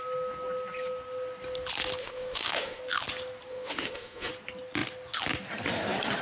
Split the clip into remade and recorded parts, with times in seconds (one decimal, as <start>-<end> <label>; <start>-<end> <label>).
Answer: 0.0-2.0 recorded; 2.0-2.8 remade; 2.8-3.5 recorded; 3.5-4.3 remade; 4.3-6.2 recorded